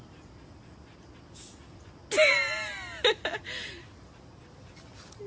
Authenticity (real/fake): real